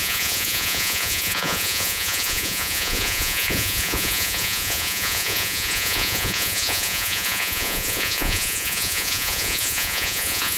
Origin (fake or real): fake